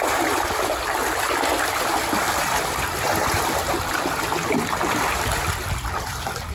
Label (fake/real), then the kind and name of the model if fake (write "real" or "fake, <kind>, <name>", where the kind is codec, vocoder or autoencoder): fake, vocoder, BigVGAN v2